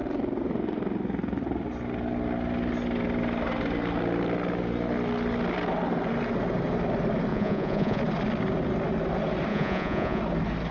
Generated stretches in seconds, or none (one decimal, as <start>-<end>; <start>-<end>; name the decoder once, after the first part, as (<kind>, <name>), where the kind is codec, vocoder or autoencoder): 7.3-8.0 (vocoder, Vocos); 9.5-10.2